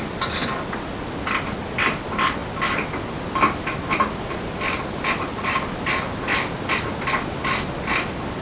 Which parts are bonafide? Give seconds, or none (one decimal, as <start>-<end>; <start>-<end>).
0.0-8.4